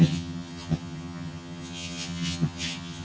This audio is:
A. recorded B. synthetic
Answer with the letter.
B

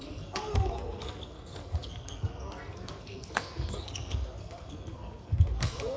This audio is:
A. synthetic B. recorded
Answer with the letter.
A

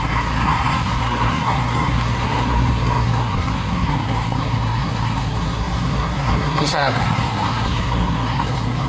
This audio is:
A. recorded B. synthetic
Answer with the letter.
B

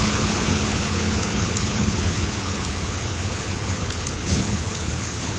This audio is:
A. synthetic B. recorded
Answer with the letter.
A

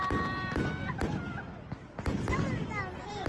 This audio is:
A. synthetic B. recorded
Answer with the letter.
B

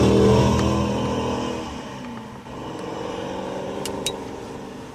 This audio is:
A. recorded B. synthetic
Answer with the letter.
A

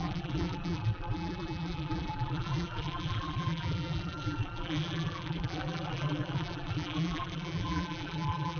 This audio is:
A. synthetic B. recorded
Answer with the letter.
A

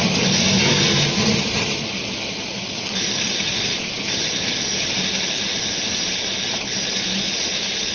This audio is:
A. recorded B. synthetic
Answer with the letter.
A